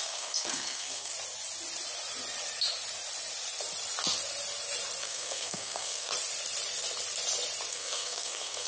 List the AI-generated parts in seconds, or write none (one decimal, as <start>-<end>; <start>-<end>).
0.0-1.1; 5.0-6.1; 7.7-8.7